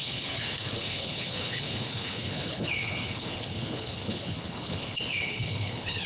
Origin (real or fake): fake